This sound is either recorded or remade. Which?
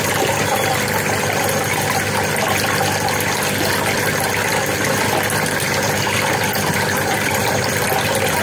recorded